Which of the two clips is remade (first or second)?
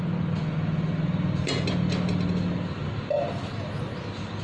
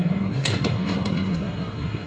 second